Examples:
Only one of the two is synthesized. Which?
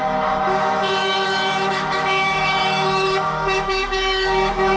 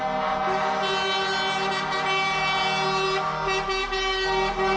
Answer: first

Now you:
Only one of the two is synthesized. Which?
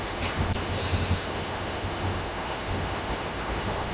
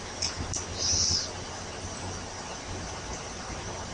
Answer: first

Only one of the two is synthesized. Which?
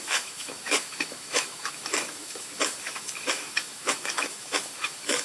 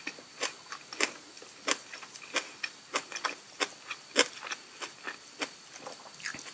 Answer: first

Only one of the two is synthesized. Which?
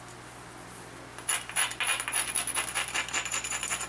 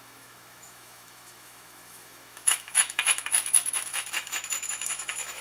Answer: second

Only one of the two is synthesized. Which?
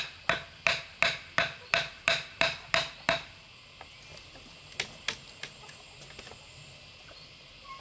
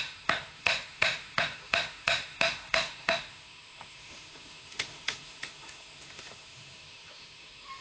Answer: second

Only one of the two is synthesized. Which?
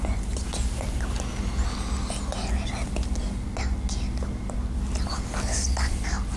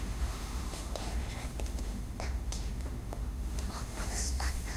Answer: second